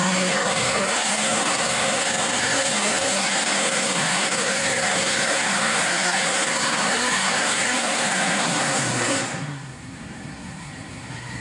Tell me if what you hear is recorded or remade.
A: remade